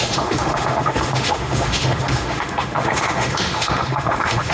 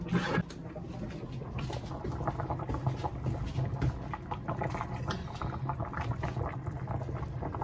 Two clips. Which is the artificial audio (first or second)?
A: first